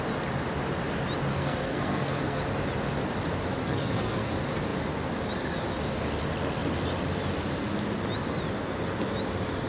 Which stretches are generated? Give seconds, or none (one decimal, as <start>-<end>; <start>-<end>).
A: 1.3-2.4; 3.6-4.3